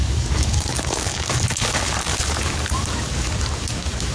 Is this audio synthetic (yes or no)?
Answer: yes